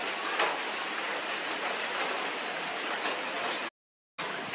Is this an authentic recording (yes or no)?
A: yes